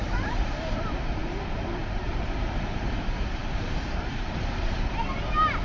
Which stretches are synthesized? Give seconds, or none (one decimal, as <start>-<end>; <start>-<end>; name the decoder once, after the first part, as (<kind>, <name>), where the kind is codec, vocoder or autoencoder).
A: 0.0-5.6 (vocoder, BigVGAN v2)